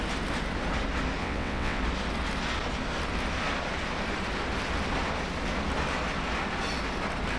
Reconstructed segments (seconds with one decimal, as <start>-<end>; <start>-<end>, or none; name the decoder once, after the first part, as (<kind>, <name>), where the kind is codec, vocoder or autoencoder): 1.2-1.8 (vocoder, WaveNeXt)